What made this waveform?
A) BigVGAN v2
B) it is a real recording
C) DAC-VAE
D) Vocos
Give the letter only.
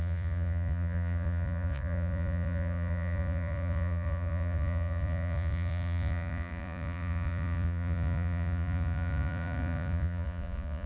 D